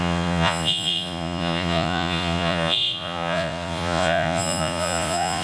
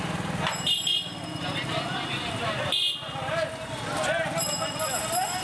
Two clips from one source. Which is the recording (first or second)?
second